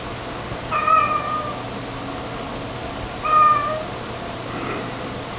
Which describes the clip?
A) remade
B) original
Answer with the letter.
B